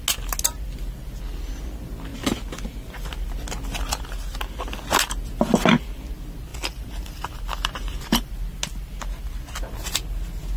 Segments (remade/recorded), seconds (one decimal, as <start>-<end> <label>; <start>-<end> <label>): 0.0-6.5 recorded; 6.5-8.3 remade; 8.3-10.6 recorded